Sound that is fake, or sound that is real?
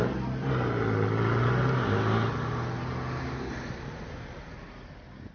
real